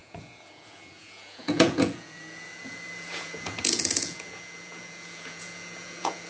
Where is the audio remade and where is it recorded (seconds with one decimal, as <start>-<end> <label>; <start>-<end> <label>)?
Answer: 0.0-6.3 remade